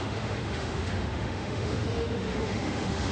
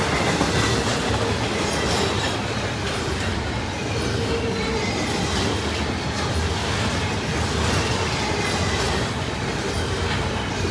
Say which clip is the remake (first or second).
first